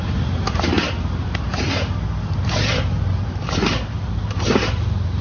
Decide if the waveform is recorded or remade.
recorded